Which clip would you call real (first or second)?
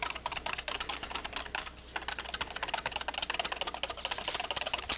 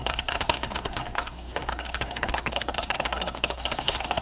first